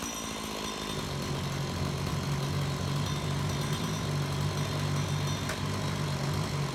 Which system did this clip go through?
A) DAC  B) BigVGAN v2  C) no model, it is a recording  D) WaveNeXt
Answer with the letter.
C